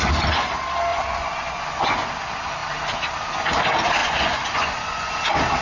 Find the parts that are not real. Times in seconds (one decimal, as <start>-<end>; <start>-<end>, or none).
0.9-2.1; 4.0-5.1